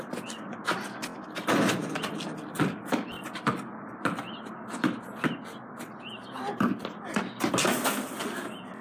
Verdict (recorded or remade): recorded